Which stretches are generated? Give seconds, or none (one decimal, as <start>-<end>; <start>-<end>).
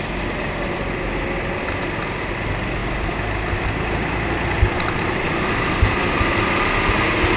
none